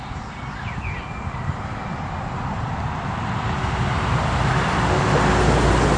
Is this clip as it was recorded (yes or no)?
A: yes